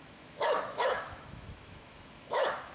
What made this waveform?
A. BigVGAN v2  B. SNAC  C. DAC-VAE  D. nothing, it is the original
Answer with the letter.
C